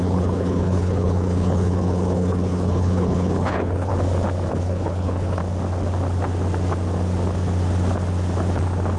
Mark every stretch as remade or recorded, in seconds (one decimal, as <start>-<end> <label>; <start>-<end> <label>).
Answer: 0.0-3.9 remade; 3.9-4.5 recorded; 4.5-5.4 remade; 5.4-9.0 recorded